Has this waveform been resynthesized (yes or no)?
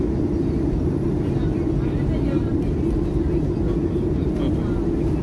no